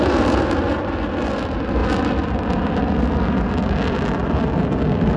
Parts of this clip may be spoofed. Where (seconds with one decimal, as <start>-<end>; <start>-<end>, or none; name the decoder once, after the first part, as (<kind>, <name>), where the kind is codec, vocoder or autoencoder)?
none